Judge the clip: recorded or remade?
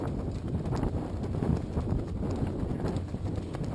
recorded